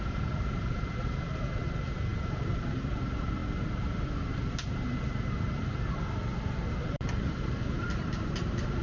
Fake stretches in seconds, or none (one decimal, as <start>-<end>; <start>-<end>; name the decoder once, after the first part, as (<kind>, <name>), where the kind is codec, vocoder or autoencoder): 0.0-8.8 (vocoder, BigVGAN v2)